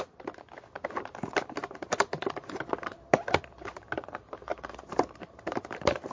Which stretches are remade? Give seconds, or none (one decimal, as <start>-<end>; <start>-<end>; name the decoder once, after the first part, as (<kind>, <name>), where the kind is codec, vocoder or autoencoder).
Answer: 1.6-2.6 (vocoder, BigVGAN v2); 4.5-6.1

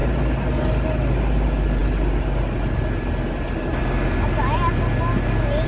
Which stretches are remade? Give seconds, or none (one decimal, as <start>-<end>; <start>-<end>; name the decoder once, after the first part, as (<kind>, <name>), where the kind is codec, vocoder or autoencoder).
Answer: none

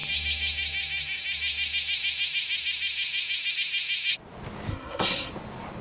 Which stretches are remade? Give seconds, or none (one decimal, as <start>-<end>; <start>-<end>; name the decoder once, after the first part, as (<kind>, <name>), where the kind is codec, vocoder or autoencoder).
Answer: 4.7-5.3 (codec, SNAC)

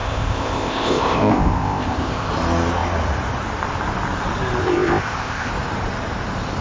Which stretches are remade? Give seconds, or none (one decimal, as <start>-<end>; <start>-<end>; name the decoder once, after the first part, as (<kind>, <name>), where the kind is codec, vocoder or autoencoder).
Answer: 0.0-2.3 (codec, ZipCodec); 4.6-5.5

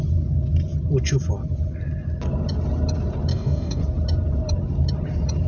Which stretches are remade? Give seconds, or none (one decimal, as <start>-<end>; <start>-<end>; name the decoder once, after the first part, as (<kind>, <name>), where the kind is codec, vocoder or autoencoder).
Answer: 3.3-3.8 (codec, DAC)

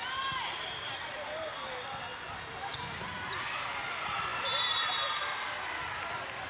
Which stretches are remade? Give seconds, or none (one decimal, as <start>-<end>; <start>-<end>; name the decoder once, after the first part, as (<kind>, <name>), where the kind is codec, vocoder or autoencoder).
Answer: none

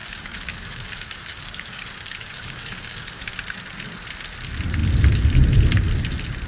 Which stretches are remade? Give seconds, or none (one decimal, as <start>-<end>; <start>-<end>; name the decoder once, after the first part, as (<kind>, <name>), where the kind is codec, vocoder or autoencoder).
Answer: 0.0-3.3 (codec, DAC)